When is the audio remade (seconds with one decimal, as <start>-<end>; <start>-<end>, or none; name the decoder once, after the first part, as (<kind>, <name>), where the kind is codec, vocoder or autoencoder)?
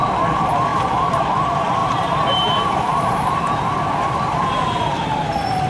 0.7-1.2 (vocoder, BigVGAN v2); 1.8-3.7